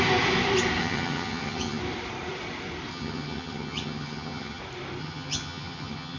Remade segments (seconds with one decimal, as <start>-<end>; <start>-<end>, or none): 0.8-1.8; 2.9-4.6; 5.0-6.2